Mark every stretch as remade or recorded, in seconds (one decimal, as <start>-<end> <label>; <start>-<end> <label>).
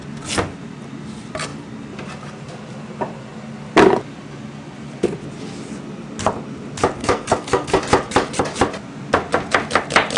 0.0-7.0 recorded; 7.0-7.8 remade; 7.8-10.2 recorded